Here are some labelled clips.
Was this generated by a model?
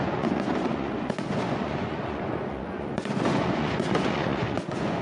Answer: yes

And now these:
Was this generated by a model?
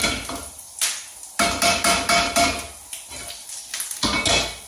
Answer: no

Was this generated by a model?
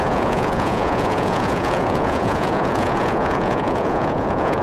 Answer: yes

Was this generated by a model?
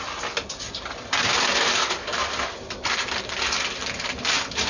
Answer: no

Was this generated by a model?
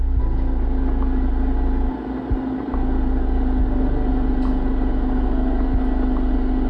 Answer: no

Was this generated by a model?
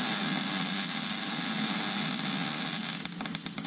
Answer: no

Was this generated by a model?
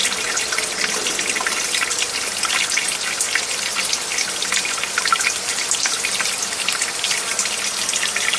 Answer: no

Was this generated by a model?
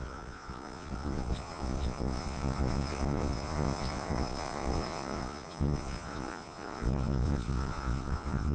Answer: yes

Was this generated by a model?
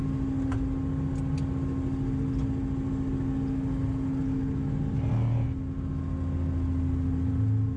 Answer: no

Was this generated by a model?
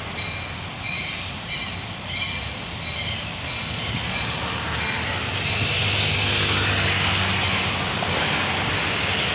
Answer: no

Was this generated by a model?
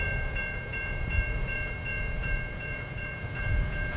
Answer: yes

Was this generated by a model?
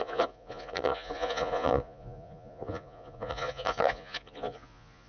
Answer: yes